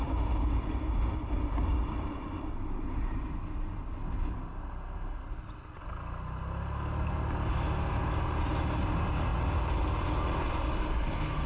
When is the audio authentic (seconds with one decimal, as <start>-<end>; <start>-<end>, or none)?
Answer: 0.0-11.5